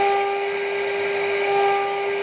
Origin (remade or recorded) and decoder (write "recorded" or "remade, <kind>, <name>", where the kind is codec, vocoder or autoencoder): recorded